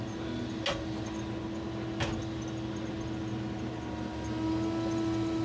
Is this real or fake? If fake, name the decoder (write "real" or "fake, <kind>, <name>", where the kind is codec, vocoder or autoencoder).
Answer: real